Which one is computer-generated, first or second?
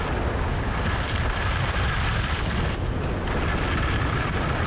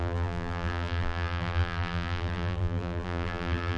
second